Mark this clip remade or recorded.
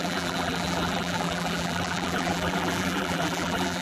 remade